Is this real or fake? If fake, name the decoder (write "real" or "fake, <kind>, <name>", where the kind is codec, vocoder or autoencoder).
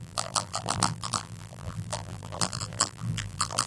fake, vocoder, BigVGAN v2